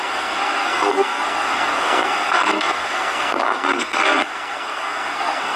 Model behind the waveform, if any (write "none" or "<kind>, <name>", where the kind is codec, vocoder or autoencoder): codec, SNAC